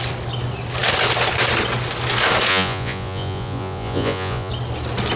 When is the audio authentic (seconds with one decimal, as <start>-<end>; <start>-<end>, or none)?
0.0-2.5; 4.5-5.2